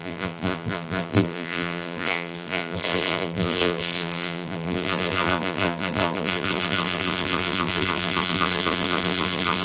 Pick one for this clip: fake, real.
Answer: fake